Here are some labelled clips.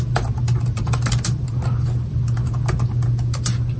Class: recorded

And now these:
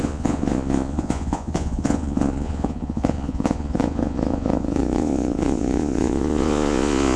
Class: remade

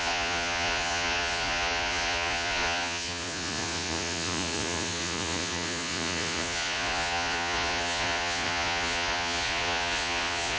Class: remade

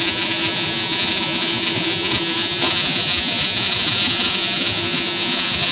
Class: remade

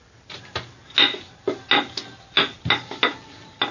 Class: recorded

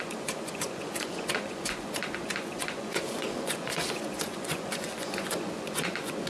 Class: remade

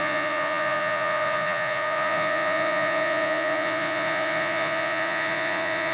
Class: remade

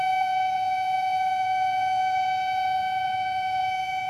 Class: remade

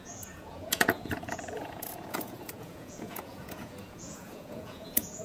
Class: remade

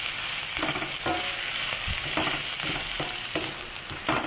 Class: recorded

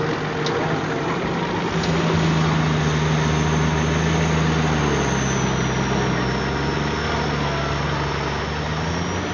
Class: recorded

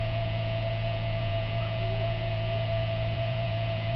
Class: remade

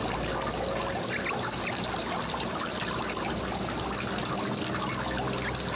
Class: recorded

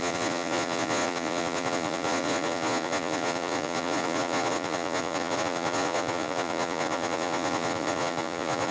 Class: remade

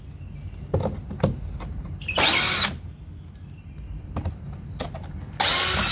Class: recorded